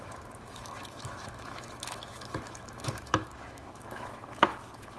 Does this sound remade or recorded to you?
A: remade